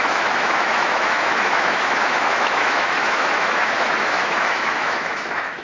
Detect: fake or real fake